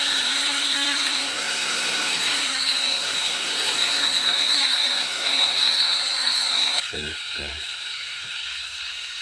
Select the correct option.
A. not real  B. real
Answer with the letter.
A